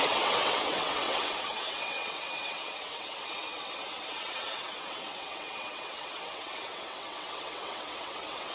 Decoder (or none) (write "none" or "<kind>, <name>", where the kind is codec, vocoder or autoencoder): vocoder, WaveNeXt